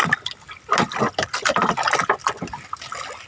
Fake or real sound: real